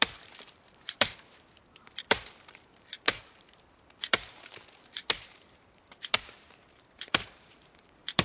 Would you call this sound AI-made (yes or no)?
yes